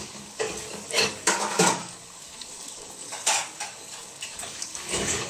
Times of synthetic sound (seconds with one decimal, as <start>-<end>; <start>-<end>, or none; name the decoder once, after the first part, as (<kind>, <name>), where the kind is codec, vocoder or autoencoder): 0.0-5.3 (codec, DAC)